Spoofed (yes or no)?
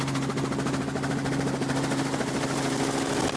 no